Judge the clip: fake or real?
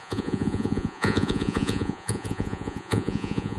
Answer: fake